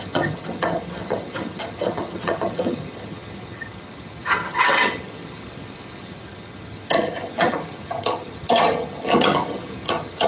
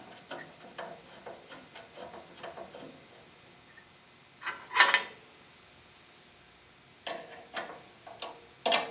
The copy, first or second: first